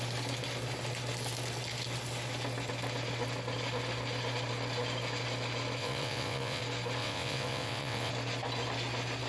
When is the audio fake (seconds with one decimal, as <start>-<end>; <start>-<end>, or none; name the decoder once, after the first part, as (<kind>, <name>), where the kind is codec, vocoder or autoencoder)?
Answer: 5.8-6.6 (vocoder, WaveNeXt); 7.0-8.1